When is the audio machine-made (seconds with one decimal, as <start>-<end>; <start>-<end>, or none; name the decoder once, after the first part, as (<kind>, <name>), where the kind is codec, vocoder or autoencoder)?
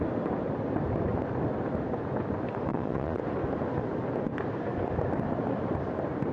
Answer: 2.7-3.2 (vocoder, Vocos)